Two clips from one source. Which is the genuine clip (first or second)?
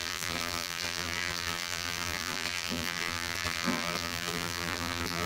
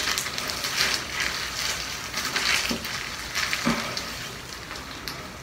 second